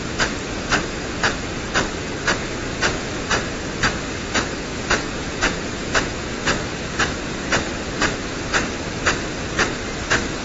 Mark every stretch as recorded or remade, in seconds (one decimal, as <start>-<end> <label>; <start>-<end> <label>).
0.0-2.7 recorded; 2.7-3.3 remade; 3.3-4.7 recorded; 4.7-7.7 remade; 7.7-10.4 recorded

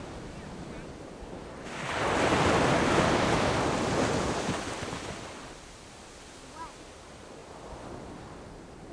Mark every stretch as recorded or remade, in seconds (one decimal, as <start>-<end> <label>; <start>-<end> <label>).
0.0-8.9 recorded

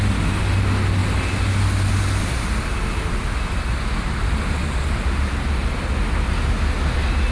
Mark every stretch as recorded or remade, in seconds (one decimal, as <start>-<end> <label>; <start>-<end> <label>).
0.0-7.3 recorded

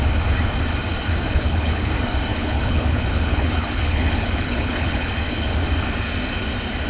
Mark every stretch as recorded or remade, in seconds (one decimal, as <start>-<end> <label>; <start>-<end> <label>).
0.0-1.3 recorded; 1.3-1.9 remade; 1.9-2.3 recorded; 2.3-5.1 remade; 5.1-6.9 recorded